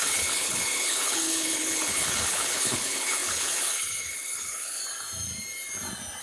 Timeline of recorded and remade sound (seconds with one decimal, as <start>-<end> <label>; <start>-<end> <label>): 0.0-4.8 remade; 4.8-6.2 recorded